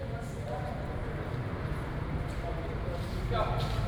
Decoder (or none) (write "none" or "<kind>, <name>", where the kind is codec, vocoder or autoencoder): none